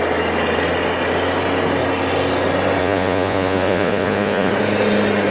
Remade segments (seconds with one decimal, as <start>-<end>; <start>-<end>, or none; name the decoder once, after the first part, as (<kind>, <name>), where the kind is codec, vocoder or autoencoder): 2.8-4.5 (vocoder, Vocos)